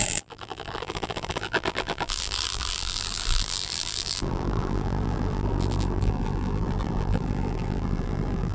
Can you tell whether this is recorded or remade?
remade